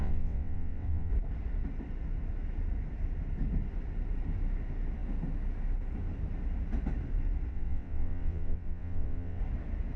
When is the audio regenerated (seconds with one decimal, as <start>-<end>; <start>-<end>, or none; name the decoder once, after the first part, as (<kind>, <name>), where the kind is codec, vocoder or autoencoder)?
0.0-1.1 (vocoder, WaveNeXt); 7.5-9.4